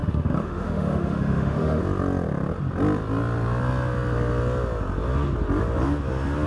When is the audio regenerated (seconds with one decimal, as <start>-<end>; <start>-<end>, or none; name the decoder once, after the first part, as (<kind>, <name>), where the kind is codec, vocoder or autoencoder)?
0.0-1.8 (autoencoder, DAC-VAE)